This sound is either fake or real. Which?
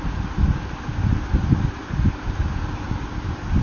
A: real